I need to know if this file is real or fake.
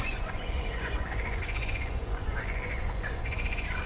fake